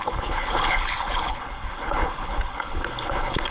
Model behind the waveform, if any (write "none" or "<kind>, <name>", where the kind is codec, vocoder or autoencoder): codec, HILCodec